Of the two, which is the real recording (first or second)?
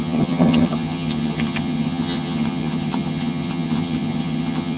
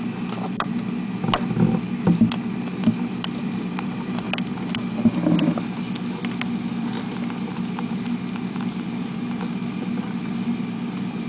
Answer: second